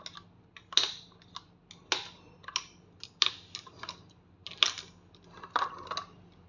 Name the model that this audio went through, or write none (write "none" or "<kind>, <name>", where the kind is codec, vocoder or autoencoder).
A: none